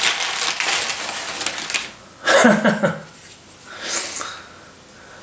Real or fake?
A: real